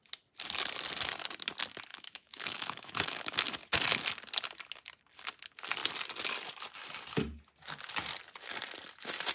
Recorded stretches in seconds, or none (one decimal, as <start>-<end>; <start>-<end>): 0.0-1.9; 3.4-9.3